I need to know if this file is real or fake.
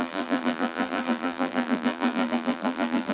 fake